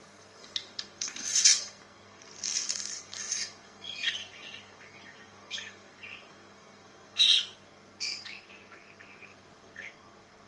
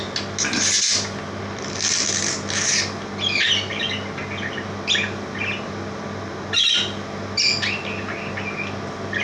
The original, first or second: second